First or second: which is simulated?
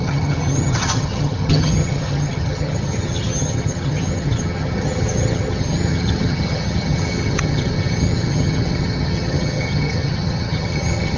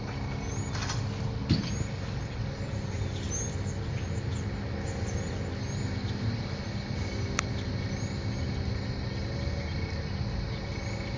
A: first